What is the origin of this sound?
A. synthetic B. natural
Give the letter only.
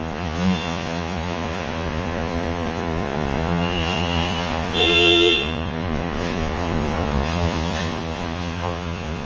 A